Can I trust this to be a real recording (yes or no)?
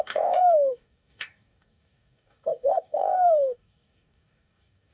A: no